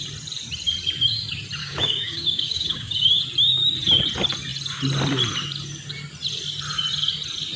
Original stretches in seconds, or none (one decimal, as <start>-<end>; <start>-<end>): 0.0-1.6; 3.2-7.6